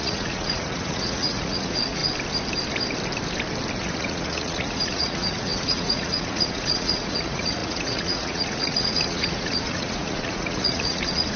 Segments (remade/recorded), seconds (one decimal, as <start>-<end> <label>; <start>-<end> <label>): 0.0-2.0 remade; 2.0-3.8 recorded; 3.8-11.4 remade